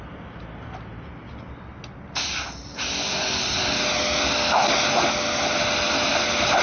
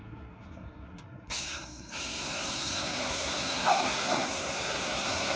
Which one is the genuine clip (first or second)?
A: first